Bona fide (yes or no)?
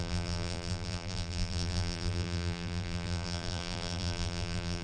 no